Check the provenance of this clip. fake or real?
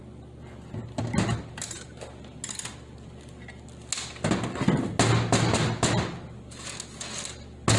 real